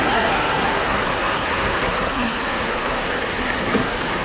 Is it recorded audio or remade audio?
remade